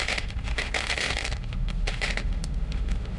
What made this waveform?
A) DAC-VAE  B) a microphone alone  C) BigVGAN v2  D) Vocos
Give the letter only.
A